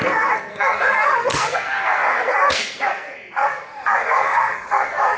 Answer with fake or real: fake